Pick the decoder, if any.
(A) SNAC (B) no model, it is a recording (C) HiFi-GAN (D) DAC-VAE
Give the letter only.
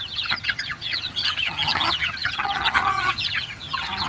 C